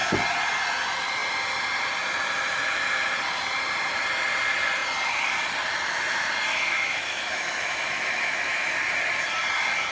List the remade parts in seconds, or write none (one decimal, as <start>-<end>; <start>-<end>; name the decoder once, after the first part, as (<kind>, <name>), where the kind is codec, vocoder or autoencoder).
6.5-8.7 (autoencoder, DAC-VAE)